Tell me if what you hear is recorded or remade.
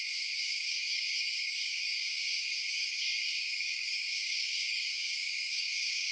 remade